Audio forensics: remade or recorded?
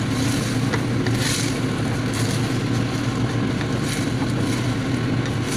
recorded